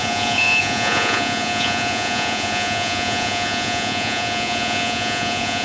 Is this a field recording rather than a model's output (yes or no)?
no